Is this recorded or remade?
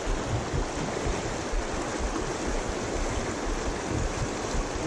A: recorded